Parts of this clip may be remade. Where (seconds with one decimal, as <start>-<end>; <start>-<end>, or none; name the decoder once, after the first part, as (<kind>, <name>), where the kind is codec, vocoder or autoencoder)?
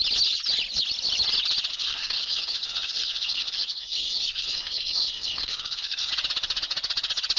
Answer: 1.7-6.1 (codec, SNAC)